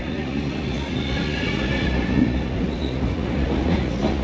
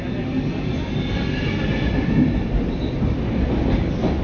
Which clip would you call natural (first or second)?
second